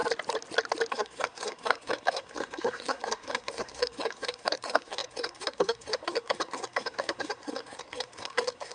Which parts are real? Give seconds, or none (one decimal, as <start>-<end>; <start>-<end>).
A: 0.0-0.9